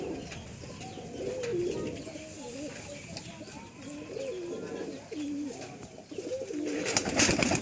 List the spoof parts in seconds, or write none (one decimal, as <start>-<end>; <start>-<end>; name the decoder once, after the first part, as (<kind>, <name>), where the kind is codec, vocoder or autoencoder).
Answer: none